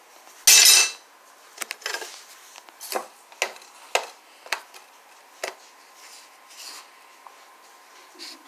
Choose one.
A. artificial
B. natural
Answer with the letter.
B